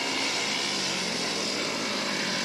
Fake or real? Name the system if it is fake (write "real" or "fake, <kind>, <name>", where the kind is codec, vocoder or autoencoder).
real